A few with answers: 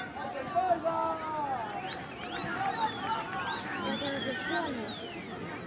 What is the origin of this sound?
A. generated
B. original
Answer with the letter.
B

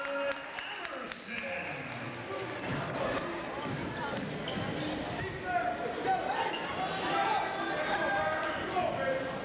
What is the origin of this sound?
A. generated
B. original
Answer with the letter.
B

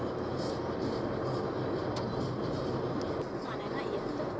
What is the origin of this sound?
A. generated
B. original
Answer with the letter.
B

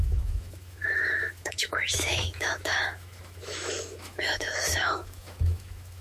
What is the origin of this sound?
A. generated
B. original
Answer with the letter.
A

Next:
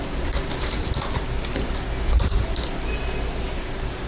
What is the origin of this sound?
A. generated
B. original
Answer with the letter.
B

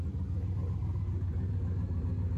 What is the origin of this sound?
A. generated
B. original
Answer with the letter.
B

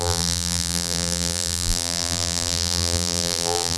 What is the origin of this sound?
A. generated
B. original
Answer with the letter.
A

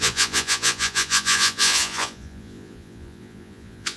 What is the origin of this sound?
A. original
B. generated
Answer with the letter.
B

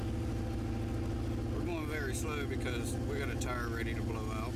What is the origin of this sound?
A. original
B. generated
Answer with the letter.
A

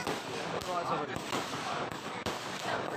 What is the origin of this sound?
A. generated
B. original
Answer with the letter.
A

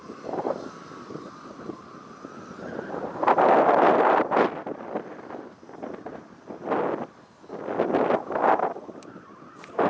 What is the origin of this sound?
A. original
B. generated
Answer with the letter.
A